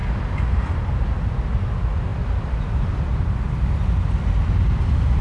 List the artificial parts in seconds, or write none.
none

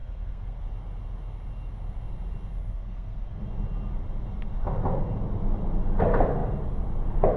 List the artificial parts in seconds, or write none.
0.0-0.6 (codec, SNAC); 2.5-3.4

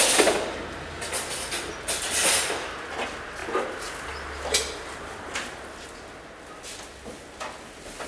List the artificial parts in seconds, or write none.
none